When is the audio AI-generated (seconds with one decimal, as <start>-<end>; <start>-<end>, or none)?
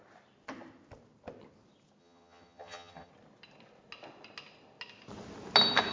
2.0-3.1